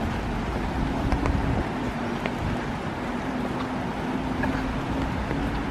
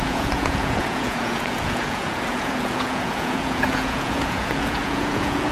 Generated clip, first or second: second